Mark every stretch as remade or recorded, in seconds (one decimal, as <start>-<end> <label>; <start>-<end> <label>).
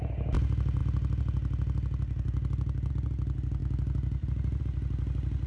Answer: 0.0-5.5 recorded